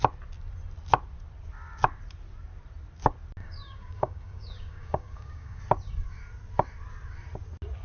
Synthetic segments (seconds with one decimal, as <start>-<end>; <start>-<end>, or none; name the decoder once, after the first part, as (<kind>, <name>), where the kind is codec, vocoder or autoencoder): 3.4-5.6 (codec, DAC)